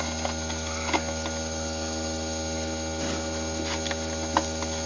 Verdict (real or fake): real